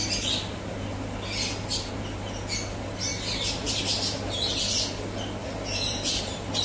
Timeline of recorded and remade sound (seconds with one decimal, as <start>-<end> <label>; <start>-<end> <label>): 0.0-3.1 recorded; 3.1-4.6 remade; 4.6-5.4 recorded; 5.4-6.6 remade